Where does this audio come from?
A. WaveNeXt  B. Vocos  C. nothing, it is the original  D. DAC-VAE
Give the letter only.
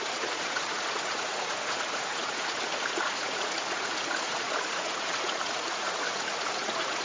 B